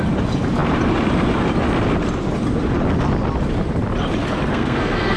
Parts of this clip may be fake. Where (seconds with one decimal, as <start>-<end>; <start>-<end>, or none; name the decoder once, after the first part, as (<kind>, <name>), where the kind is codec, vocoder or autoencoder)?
4.5-5.2 (codec, SNAC)